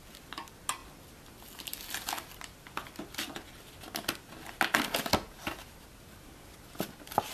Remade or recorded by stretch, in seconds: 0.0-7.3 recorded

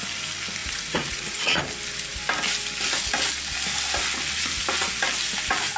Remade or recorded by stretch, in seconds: 0.0-0.6 recorded; 0.6-1.6 remade; 1.6-5.8 recorded

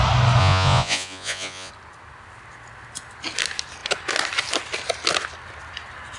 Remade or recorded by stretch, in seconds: 0.0-0.4 recorded; 0.4-1.7 remade; 1.7-6.2 recorded

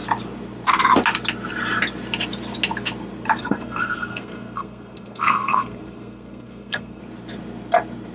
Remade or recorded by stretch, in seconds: 0.0-3.4 recorded; 3.4-7.0 remade; 7.0-8.1 recorded

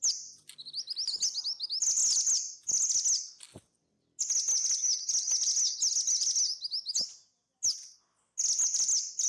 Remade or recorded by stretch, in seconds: 0.0-9.3 recorded

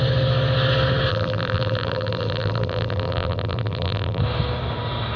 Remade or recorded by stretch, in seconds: 0.0-1.1 recorded; 1.1-4.2 remade; 4.2-5.2 recorded

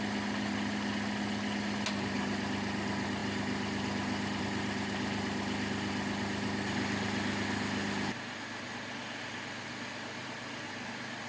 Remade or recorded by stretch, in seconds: 0.0-11.3 recorded